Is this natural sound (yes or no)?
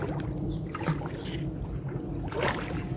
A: yes